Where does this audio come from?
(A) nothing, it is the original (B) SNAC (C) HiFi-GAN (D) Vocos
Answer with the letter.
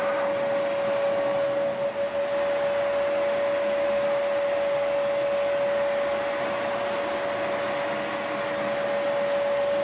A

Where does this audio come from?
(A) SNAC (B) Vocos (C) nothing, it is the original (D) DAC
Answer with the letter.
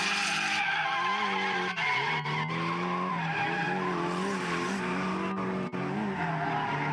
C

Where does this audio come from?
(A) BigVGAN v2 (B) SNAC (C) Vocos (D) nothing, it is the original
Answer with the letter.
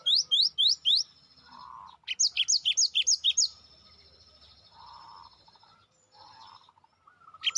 D